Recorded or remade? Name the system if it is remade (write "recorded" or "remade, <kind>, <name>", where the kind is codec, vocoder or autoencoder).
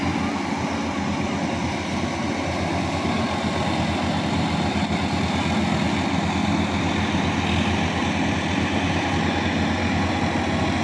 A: recorded